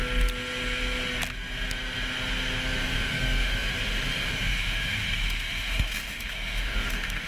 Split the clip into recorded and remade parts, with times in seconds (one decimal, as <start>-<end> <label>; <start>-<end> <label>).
0.0-2.8 recorded; 2.8-7.3 remade

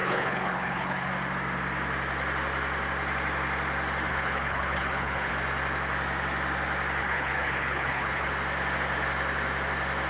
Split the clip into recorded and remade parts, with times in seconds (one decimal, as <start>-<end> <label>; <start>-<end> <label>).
0.0-1.1 remade; 1.1-4.1 recorded; 4.1-5.3 remade; 5.3-7.0 recorded; 7.0-8.3 remade; 8.3-10.1 recorded